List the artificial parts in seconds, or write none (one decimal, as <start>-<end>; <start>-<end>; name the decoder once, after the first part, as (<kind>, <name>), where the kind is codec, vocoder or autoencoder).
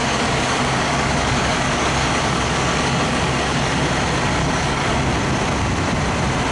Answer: 0.0-3.9 (codec, DAC); 4.4-5.0